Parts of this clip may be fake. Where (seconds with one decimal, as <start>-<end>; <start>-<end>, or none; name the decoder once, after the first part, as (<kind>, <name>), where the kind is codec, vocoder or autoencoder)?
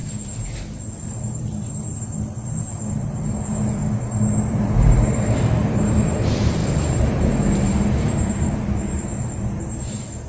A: 2.9-3.8 (vocoder, BigVGAN v2); 4.5-10.3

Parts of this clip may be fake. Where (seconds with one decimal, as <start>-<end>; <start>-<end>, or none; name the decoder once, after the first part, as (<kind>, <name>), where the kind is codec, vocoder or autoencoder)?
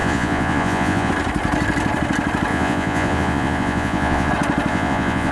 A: 0.0-1.1 (vocoder, Vocos); 2.5-4.3; 4.7-5.3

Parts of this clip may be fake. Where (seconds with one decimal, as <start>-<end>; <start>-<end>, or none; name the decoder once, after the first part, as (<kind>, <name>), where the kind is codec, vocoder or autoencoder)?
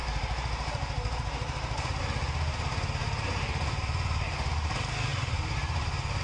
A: 0.0-2.0 (vocoder, BigVGAN v2); 3.0-4.5; 5.1-6.2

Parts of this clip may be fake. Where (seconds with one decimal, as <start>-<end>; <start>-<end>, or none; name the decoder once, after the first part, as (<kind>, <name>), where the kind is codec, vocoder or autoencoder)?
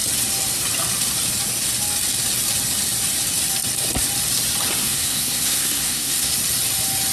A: 4.8-6.3 (codec, SNAC)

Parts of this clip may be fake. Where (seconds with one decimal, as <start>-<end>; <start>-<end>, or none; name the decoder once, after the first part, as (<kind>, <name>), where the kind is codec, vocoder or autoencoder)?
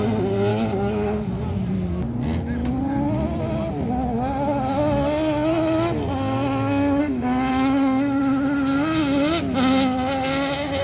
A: 0.5-1.4 (codec, DAC); 7.5-8.2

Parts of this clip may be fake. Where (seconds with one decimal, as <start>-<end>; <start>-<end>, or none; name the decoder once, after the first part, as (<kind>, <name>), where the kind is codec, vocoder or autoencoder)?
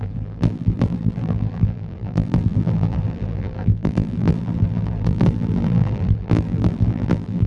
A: 0.0-7.5 (vocoder, BigVGAN v2)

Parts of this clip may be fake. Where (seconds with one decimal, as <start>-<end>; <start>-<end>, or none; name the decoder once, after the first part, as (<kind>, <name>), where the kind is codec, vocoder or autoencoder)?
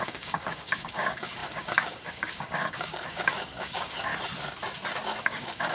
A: 0.0-4.1 (codec, DAC); 5.2-5.7